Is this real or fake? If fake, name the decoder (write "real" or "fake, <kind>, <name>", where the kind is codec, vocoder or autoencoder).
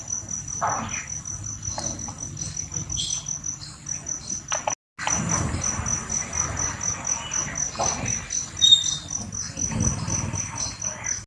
real